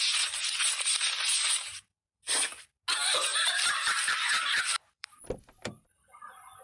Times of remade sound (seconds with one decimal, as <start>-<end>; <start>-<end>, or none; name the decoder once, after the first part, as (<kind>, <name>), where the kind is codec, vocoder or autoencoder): 1.7-2.6 (vocoder, BigVGAN v2); 3.3-5.1